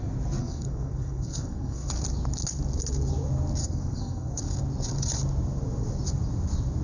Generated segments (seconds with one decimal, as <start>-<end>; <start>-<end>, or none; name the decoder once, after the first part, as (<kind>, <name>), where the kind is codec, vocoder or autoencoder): 0.4-1.9 (codec, SNAC); 3.6-4.4